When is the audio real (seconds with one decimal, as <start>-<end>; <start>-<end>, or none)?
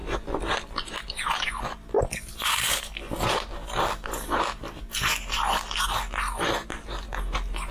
0.0-7.7